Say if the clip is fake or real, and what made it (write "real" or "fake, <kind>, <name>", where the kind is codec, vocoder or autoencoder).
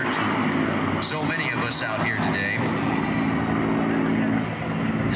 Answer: real